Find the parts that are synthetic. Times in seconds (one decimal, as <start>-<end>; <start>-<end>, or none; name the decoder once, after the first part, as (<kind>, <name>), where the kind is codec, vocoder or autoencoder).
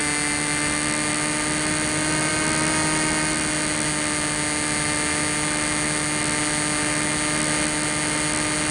none